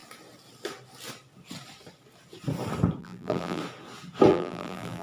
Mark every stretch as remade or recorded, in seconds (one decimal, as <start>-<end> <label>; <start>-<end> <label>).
0.0-3.0 recorded; 3.0-3.6 remade; 3.6-4.3 recorded; 4.3-5.0 remade